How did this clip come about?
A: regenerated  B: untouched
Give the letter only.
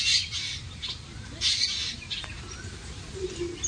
B